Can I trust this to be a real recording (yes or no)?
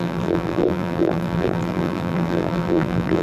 no